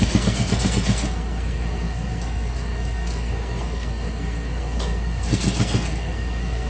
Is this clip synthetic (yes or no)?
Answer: yes